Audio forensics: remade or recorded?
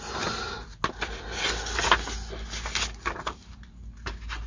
recorded